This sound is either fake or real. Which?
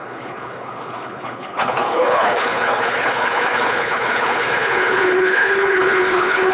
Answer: fake